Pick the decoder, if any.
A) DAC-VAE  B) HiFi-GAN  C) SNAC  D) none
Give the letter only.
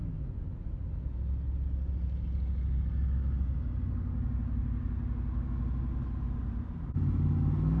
D